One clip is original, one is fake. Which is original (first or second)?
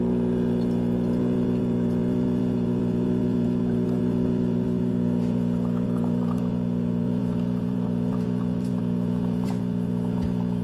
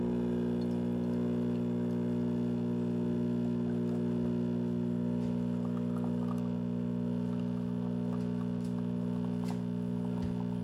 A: second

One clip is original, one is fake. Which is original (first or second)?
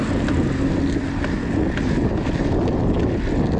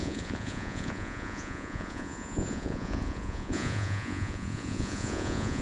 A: first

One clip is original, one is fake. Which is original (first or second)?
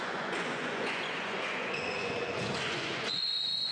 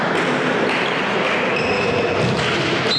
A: second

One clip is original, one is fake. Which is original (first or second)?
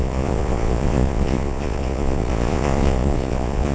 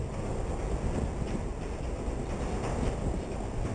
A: second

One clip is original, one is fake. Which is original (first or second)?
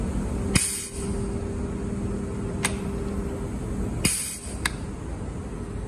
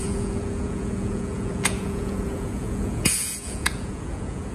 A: first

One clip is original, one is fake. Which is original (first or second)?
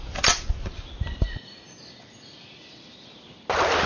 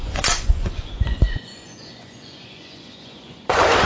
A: first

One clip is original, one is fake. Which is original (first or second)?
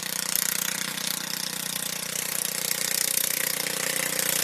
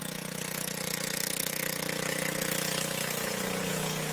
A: first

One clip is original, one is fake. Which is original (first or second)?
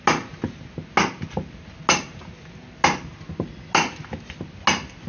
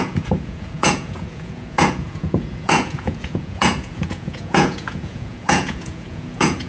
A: first